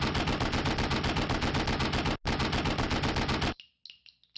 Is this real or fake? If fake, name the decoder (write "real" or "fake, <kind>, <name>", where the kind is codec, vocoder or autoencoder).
real